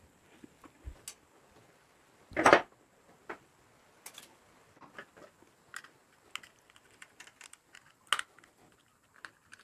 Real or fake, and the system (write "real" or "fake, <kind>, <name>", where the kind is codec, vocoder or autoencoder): real